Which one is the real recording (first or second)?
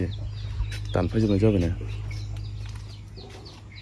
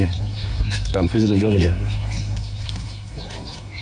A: first